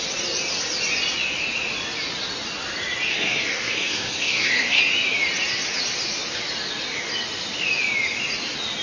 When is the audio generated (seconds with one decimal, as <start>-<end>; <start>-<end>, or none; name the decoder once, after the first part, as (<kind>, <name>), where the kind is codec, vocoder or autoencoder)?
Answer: 3.1-4.8 (codec, SNAC)